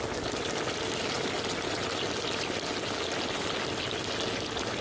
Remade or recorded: recorded